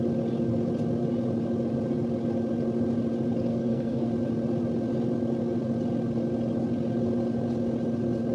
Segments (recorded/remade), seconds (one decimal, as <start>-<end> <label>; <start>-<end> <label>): 0.0-3.5 recorded; 3.5-4.1 remade; 4.1-8.3 recorded